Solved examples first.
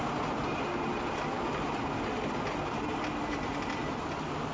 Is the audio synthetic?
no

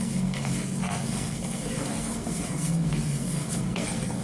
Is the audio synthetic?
yes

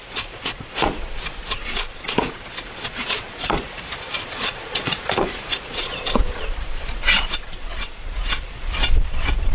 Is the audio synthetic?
yes